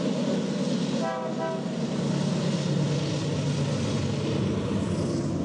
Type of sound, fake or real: real